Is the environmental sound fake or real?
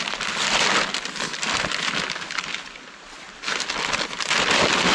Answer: real